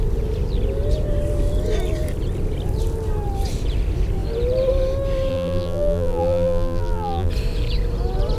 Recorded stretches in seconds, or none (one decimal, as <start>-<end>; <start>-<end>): 0.0-5.3; 7.3-8.4

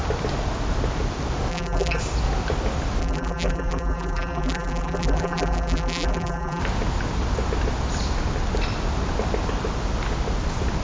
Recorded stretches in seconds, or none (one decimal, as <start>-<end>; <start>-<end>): 0.0-1.5; 2.0-3.0; 6.6-10.8

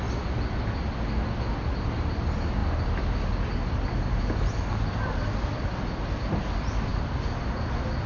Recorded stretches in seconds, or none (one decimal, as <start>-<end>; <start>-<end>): 0.0-6.9; 7.4-8.1

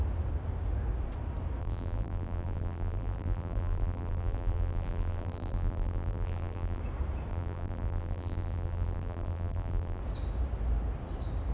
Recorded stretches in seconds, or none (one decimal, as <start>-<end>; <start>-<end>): 0.0-1.6; 6.8-7.3; 10.0-11.5

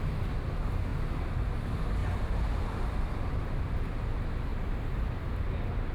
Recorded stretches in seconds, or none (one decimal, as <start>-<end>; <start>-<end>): 0.0-2.0; 3.9-4.5; 5.3-5.9

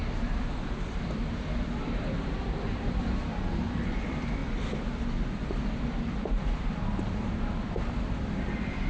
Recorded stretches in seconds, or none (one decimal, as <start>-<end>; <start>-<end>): none

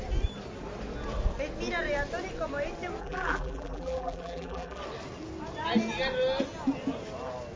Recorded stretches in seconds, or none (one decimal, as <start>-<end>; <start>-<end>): 0.0-3.0; 4.8-7.6